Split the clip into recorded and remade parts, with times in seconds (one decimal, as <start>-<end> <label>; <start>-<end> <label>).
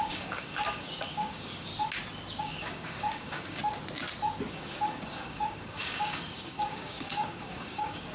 0.0-1.7 remade; 1.7-2.4 recorded; 2.4-3.6 remade; 3.6-4.5 recorded; 4.5-8.1 remade